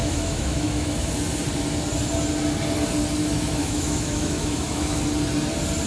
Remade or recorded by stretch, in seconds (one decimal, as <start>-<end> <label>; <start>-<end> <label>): 0.0-1.1 remade; 1.1-3.2 recorded; 3.2-5.0 remade; 5.0-5.9 recorded